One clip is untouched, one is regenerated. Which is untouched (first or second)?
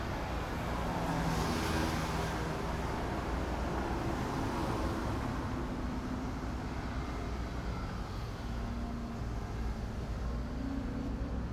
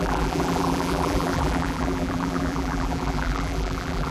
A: first